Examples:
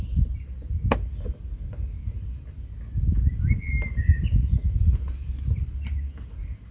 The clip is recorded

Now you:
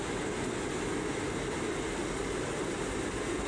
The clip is recorded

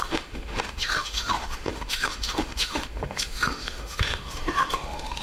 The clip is remade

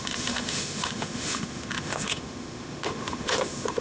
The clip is remade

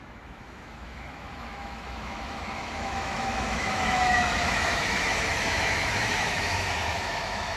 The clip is remade